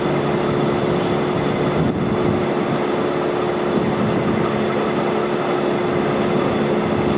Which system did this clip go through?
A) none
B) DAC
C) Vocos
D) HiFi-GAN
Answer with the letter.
A